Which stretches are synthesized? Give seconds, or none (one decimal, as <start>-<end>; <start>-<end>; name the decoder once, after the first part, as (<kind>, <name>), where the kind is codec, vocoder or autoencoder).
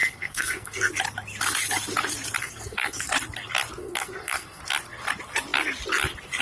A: 0.0-0.9 (codec, SNAC); 2.4-3.1; 3.8-4.6